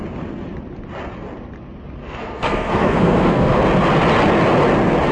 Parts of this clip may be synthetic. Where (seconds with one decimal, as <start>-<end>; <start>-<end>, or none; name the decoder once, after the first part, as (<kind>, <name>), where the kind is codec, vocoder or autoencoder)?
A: 2.0-3.6 (codec, SNAC)